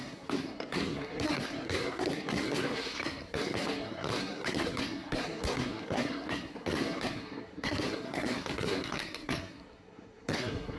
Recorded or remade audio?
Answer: remade